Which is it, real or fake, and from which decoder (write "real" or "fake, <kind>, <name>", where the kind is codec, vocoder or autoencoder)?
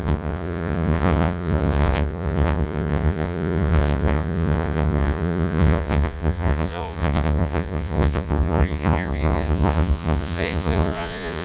fake, vocoder, Vocos